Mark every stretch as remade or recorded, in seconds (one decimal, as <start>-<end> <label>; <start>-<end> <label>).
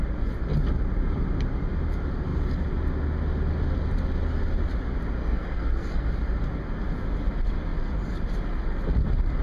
0.0-5.2 recorded; 5.2-6.1 remade; 6.1-9.4 recorded